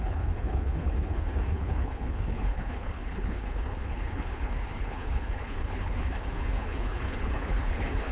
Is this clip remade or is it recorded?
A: remade